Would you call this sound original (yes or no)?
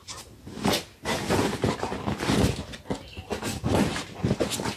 yes